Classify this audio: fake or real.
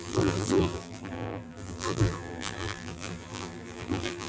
fake